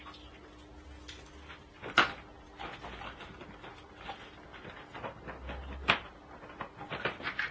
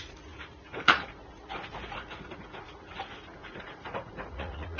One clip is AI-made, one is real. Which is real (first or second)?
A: first